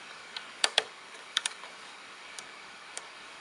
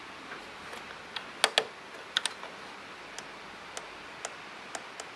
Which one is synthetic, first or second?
first